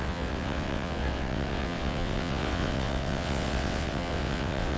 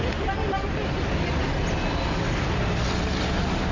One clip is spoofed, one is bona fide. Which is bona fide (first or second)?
second